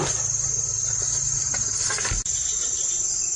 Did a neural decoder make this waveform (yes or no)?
no